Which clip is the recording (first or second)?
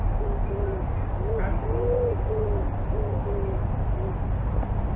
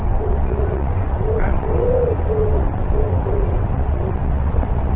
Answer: first